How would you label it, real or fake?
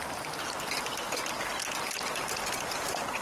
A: real